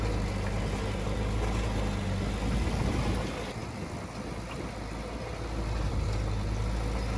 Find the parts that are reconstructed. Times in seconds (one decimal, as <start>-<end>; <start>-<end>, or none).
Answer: none